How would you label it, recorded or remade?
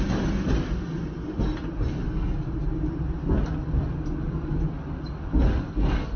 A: recorded